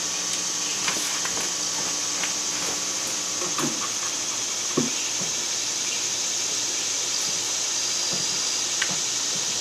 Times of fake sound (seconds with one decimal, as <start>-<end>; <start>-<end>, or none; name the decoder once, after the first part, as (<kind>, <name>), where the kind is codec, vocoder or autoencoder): none